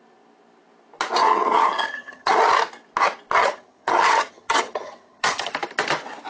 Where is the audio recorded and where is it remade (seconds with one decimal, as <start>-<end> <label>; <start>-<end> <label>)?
0.0-1.2 recorded; 1.2-2.4 remade; 2.4-3.4 recorded; 3.4-5.5 remade; 5.5-6.3 recorded